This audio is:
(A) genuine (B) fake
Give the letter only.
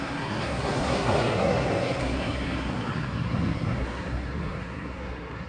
B